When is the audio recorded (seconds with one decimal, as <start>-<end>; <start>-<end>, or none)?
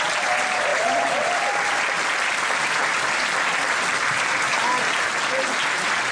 0.0-0.7; 3.1-6.1